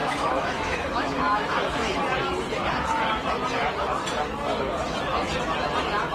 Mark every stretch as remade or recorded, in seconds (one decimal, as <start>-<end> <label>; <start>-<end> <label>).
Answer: 0.0-2.0 remade; 2.0-6.1 recorded